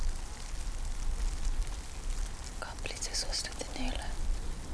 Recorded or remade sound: recorded